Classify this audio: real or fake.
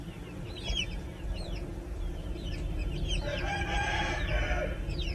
fake